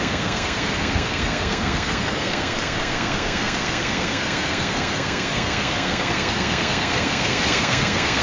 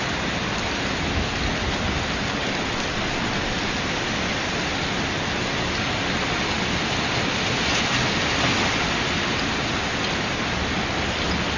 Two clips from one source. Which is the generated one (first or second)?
first